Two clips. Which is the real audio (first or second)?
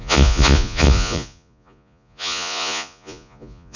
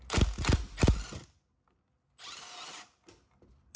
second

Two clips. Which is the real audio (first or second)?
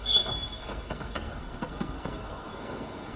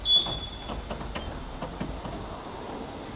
second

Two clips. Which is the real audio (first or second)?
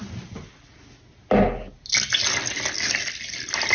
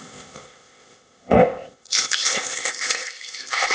first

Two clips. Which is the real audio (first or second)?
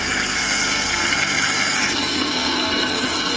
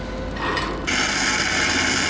second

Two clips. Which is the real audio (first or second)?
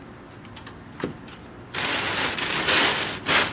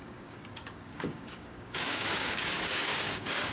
first